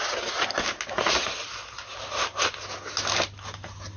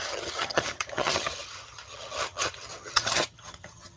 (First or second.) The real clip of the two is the first